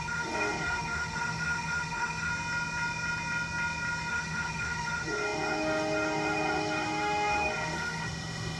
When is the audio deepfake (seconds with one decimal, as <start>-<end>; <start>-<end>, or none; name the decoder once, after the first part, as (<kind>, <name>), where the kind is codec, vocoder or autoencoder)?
0.0-2.3 (autoencoder, DAC-VAE); 4.1-8.6